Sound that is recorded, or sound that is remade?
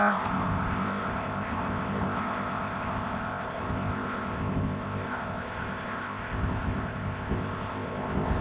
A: remade